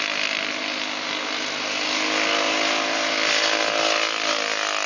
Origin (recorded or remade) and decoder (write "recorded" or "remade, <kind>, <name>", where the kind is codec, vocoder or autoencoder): recorded